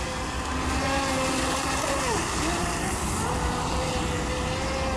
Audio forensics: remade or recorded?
recorded